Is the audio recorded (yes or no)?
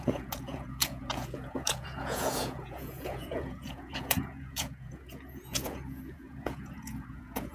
no